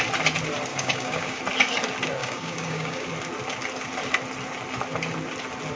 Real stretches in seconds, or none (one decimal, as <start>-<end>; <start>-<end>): 0.0-0.7; 1.4-2.2; 3.1-5.8

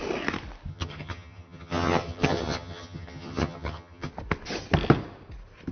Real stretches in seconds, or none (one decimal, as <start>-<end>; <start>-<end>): 0.0-0.7; 4.1-5.7

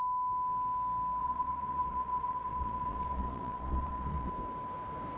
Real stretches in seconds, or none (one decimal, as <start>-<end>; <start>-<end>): 0.0-1.2; 4.3-5.2

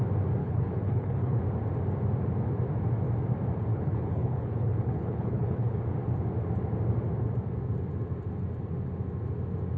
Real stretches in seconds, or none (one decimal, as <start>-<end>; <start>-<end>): 0.0-0.4; 1.4-3.7; 5.8-9.8